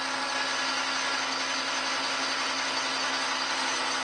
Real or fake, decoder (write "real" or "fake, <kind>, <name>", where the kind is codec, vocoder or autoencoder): real